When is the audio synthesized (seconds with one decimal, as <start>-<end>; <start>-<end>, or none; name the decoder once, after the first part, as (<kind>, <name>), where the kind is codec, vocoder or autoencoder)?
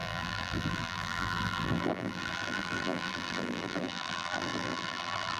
0.0-5.4 (vocoder, BigVGAN v2)